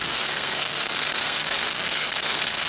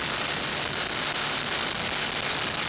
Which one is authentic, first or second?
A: second